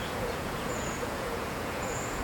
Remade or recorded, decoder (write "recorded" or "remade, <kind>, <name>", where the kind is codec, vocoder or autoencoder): remade, vocoder, Vocos